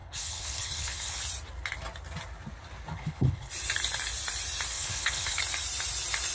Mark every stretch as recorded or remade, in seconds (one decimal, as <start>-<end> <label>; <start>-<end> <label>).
0.0-1.2 remade; 1.2-2.9 recorded; 2.9-3.5 remade; 3.5-4.7 recorded; 4.7-5.4 remade; 5.4-6.3 recorded